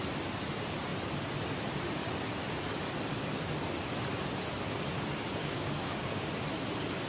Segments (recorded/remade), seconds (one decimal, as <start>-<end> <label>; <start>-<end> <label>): 0.0-5.4 recorded; 5.4-6.3 remade; 6.3-7.1 recorded